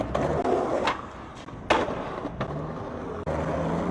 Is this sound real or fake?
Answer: real